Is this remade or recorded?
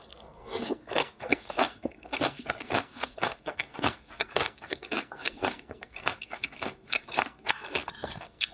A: remade